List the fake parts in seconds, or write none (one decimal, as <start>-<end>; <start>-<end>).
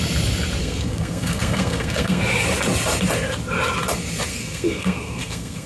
0.6-2.2; 4.3-5.7